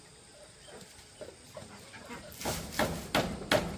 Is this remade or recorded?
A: recorded